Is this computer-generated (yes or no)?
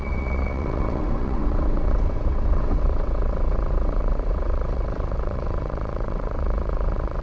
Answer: yes